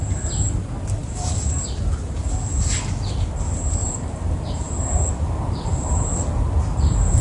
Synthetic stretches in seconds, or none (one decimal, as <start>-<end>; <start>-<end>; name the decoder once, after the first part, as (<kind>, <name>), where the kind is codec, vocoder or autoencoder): 1.0-2.2 (vocoder, BigVGAN v2); 3.8-7.2